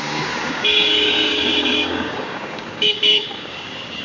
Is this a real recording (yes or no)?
no